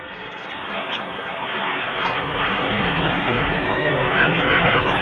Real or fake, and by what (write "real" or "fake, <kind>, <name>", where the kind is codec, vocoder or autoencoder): fake, codec, SNAC